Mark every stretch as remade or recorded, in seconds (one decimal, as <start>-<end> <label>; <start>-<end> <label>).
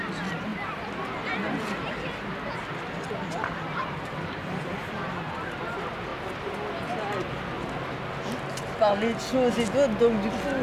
0.0-3.8 recorded; 3.8-4.6 remade; 4.6-10.6 recorded